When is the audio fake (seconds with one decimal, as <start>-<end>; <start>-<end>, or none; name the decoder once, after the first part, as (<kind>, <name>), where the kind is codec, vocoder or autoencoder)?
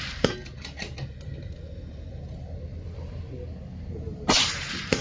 none